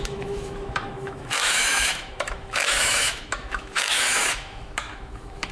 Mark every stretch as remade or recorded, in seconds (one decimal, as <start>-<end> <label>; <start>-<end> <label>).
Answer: 0.0-5.5 remade